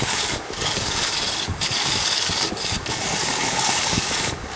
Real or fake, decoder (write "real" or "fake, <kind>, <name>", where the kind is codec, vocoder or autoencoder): fake, codec, DAC